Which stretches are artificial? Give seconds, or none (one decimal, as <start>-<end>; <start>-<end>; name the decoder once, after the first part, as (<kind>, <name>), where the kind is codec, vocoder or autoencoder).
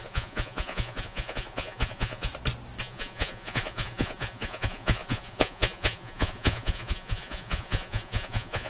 0.0-2.3 (vocoder, Vocos); 2.8-8.7